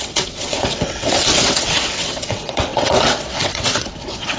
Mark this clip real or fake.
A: fake